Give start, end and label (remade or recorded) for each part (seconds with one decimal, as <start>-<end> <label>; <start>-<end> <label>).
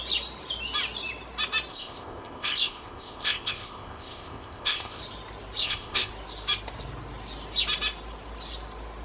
0.0-1.7 recorded; 1.7-5.0 remade; 5.0-5.6 recorded; 5.6-6.1 remade; 6.1-9.0 recorded